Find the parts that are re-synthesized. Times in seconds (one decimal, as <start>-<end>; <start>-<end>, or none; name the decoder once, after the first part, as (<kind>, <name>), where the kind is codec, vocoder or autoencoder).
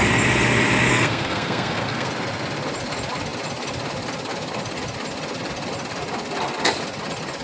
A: 0.9-2.1 (codec, SNAC)